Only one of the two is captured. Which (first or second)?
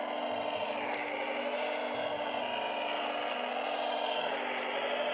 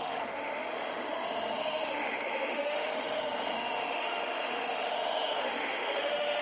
first